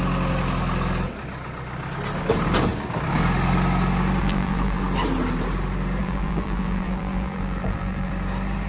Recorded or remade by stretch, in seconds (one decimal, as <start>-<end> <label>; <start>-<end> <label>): 0.0-4.2 recorded; 4.2-4.8 remade; 4.8-6.0 recorded; 6.0-8.1 remade; 8.1-8.7 recorded